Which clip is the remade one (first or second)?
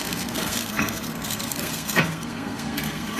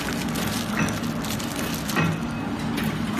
first